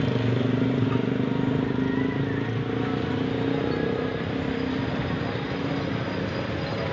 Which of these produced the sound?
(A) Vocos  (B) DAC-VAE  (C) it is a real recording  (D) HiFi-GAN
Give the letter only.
C